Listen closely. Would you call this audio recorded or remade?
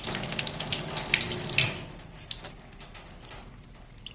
recorded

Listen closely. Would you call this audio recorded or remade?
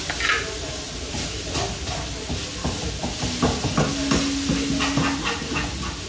recorded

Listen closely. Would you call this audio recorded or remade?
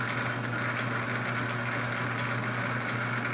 recorded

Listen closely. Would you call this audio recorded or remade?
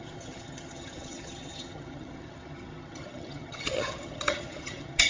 remade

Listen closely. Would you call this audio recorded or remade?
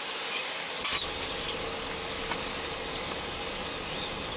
recorded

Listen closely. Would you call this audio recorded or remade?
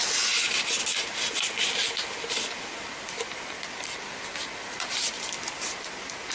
recorded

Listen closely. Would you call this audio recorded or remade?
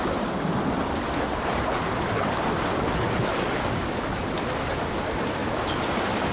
recorded